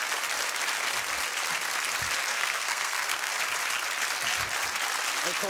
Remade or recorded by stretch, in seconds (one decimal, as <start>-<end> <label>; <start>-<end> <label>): 0.0-2.3 recorded; 2.3-3.3 remade; 3.3-5.5 recorded